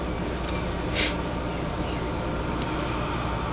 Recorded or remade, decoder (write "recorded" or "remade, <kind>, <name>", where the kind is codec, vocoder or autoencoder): recorded